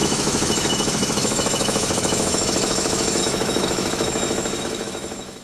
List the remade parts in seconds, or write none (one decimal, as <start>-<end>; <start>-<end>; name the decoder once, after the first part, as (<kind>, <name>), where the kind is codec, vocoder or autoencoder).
0.0-5.4 (autoencoder, DAC-VAE)